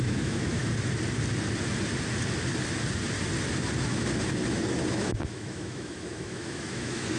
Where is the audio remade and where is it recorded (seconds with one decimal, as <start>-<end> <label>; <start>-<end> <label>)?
0.0-0.6 remade; 0.6-4.9 recorded; 4.9-7.2 remade